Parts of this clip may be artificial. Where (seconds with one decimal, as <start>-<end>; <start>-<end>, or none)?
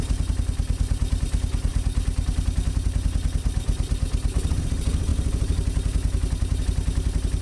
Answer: none